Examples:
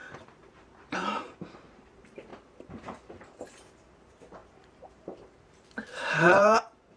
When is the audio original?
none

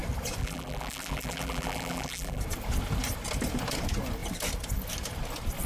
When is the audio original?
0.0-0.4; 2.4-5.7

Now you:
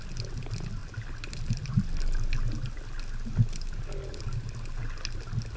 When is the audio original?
0.0-5.6